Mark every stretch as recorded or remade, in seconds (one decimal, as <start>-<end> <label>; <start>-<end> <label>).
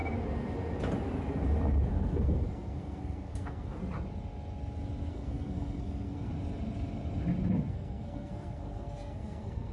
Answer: 0.0-1.9 recorded; 1.9-3.8 remade; 3.8-5.1 recorded; 5.1-6.3 remade; 6.3-7.7 recorded; 7.7-9.7 remade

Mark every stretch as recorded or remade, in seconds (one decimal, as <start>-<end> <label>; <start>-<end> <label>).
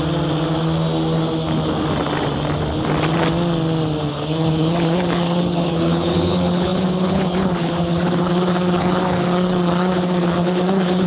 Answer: 0.0-4.1 recorded; 4.1-11.1 remade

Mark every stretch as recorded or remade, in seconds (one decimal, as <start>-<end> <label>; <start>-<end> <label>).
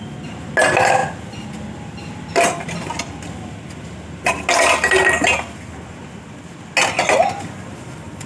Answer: 0.0-8.3 recorded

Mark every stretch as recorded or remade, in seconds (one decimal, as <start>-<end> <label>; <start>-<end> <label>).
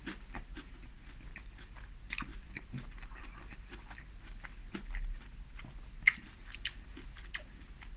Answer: 0.0-2.3 recorded; 2.3-3.6 remade; 3.6-8.0 recorded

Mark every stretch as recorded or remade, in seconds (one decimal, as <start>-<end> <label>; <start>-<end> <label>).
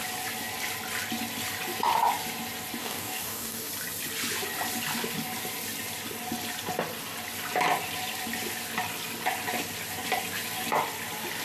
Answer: 0.0-2.8 recorded; 2.8-3.7 remade; 3.7-11.4 recorded